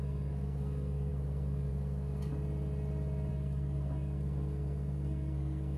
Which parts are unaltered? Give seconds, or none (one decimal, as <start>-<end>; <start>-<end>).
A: 2.3-3.3